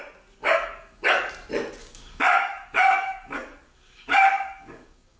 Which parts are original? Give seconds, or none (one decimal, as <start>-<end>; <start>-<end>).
0.0-0.4; 1.3-1.8